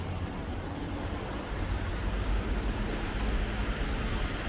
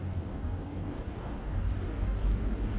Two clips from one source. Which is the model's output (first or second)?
second